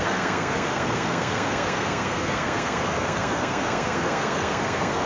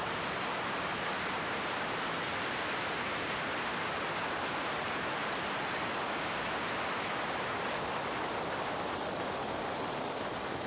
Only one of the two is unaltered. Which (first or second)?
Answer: second